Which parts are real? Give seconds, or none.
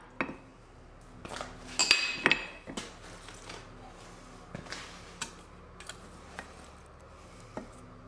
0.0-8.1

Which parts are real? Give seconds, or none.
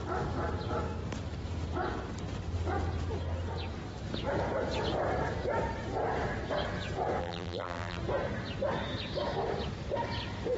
0.0-7.2; 8.0-10.6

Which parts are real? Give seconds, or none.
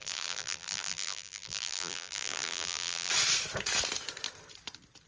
3.1-5.1